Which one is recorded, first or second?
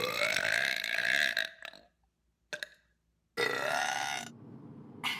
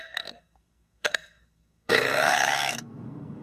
first